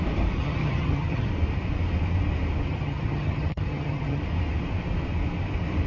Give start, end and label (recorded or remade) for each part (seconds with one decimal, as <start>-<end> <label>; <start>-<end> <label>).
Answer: 0.0-0.4 recorded; 0.4-1.3 remade; 1.3-2.7 recorded; 2.7-4.2 remade; 4.2-5.9 recorded